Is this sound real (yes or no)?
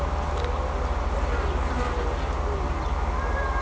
yes